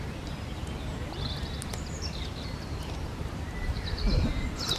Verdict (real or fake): fake